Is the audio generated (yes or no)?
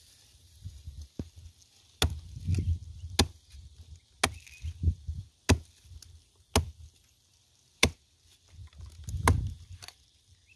no